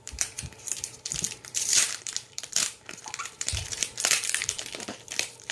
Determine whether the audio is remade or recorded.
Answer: remade